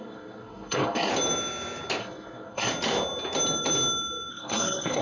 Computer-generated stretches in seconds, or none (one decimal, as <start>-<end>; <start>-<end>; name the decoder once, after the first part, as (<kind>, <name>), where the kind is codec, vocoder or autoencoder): 0.0-1.1 (codec, SNAC); 2.0-2.7; 4.3-5.0